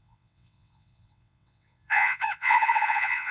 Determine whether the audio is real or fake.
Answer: fake